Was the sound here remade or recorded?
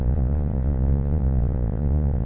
remade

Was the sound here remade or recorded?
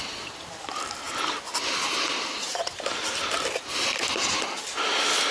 recorded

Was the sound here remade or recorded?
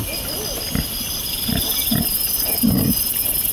recorded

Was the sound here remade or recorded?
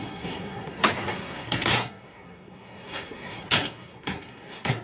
remade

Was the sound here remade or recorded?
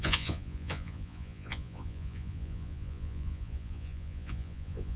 remade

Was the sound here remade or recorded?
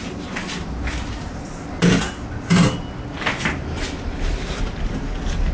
recorded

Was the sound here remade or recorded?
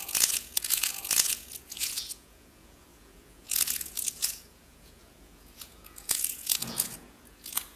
remade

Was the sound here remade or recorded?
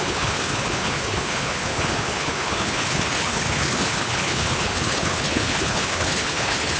remade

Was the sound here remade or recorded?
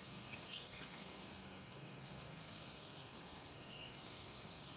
remade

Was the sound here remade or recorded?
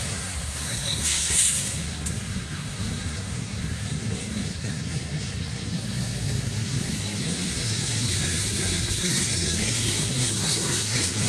remade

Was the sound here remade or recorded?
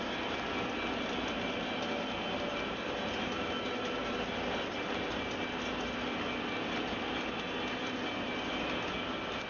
recorded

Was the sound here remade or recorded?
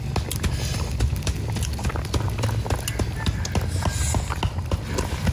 recorded